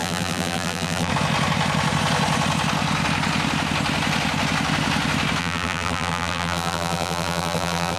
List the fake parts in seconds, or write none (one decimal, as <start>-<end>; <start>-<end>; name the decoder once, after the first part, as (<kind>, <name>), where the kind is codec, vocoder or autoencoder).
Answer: 0.0-1.1 (vocoder, BigVGAN v2); 5.4-8.0